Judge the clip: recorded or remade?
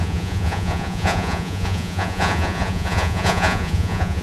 remade